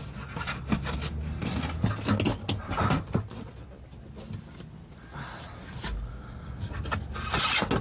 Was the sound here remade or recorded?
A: recorded